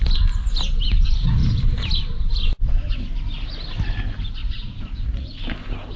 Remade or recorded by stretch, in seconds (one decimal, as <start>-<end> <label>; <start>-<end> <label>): 0.0-4.4 recorded; 4.4-5.4 remade; 5.4-6.0 recorded